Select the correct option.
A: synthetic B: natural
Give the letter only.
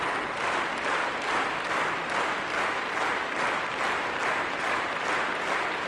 B